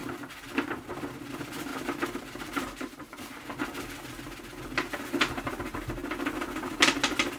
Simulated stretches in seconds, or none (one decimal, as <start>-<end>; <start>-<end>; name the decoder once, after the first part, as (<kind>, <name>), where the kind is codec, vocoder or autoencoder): 1.7-3.2 (vocoder, BigVGAN v2)